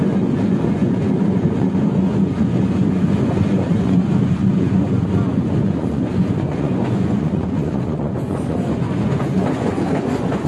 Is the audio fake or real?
fake